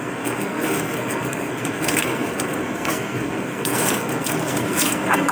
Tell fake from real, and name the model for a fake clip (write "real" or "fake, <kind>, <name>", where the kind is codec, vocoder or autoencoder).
fake, codec, SNAC